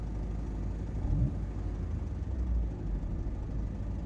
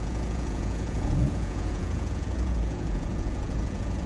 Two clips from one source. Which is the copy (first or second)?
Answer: second